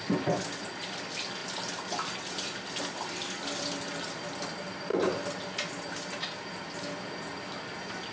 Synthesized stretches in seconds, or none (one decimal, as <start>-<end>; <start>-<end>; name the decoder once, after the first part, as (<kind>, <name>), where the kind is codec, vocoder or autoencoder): none